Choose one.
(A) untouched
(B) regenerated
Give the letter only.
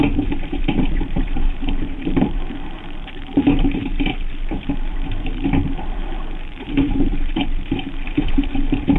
B